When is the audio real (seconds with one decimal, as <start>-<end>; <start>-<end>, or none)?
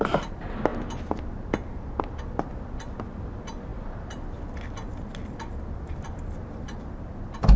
0.0-7.6